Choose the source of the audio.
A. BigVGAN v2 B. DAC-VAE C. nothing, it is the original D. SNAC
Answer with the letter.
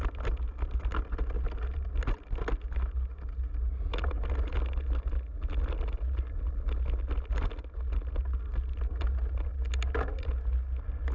C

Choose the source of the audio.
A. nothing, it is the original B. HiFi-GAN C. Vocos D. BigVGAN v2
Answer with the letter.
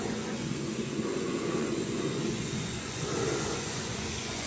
C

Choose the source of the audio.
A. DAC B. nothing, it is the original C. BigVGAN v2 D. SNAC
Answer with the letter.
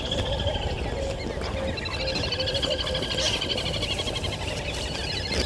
B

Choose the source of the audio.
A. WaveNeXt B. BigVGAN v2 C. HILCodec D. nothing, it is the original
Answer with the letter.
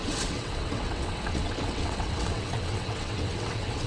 A